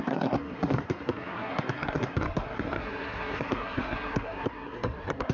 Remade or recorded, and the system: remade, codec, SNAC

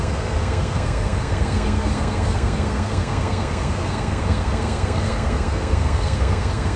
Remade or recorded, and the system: remade, codec, SNAC